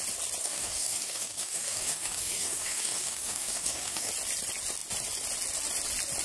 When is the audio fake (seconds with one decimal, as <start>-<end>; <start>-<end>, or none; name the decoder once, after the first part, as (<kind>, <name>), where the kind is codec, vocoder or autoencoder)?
0.4-4.1 (codec, DAC)